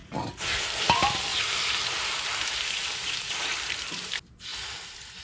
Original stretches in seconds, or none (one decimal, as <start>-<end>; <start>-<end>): 0.0-5.2

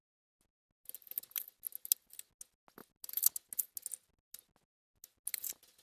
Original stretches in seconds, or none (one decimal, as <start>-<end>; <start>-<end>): 0.0-5.8

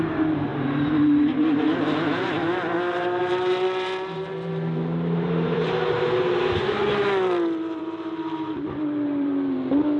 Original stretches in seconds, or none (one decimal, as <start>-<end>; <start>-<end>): none